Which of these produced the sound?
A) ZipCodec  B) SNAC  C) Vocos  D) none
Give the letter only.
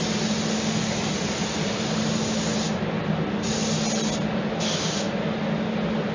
D